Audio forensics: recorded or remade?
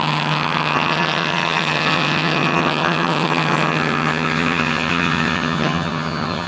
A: remade